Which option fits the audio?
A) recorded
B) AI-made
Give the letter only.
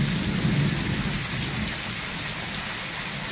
A